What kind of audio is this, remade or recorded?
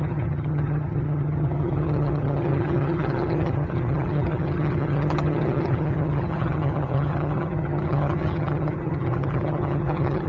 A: remade